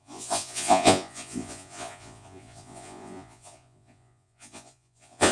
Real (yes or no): no